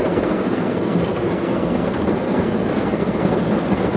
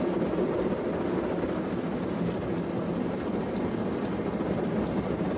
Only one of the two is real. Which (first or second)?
second